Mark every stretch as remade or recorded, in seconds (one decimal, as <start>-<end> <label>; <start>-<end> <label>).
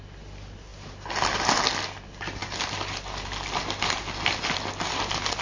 0.0-5.4 recorded